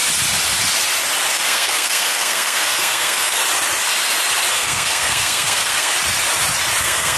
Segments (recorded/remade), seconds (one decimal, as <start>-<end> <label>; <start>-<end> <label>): 0.0-1.3 recorded; 1.3-3.4 remade; 3.4-4.5 recorded; 4.5-5.9 remade; 5.9-6.8 recorded; 6.8-7.2 remade